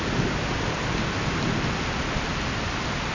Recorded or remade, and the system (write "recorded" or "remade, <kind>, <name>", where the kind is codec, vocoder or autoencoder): recorded